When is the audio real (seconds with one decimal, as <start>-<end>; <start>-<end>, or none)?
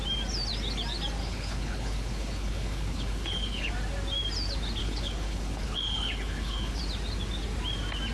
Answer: 0.0-1.2; 3.7-4.8; 6.8-8.1